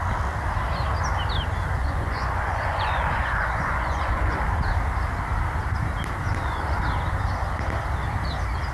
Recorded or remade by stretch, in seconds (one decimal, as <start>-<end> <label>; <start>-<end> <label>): 0.0-1.8 recorded; 1.8-4.4 remade; 4.4-6.2 recorded; 6.2-6.8 remade; 6.8-8.7 recorded